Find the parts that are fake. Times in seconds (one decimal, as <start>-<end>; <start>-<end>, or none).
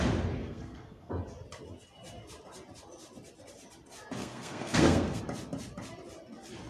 0.4-1.1; 4.2-5.2